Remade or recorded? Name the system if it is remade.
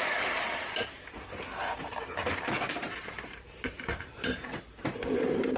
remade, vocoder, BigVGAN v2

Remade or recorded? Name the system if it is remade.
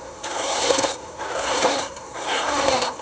remade, codec, SNAC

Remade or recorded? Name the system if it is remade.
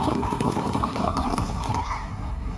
remade, codec, SNAC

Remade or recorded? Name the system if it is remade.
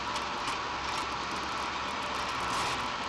recorded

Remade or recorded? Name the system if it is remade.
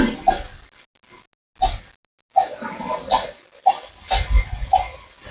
recorded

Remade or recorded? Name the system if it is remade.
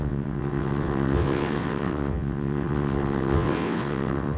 remade, vocoder, WaveNeXt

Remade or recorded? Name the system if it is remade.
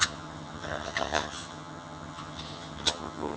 remade, vocoder, HiFi-GAN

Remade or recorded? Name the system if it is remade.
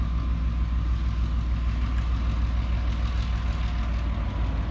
recorded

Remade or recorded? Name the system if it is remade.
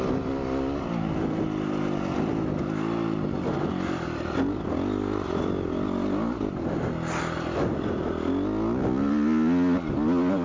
recorded